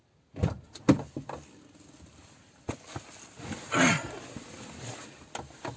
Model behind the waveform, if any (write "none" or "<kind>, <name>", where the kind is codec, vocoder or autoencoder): none